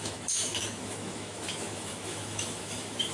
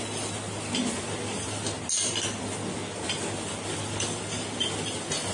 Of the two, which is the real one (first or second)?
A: second